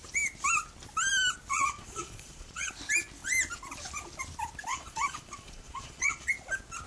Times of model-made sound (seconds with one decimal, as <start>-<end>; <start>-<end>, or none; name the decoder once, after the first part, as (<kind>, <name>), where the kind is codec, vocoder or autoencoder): 1.5-2.7 (vocoder, Vocos); 4.7-6.3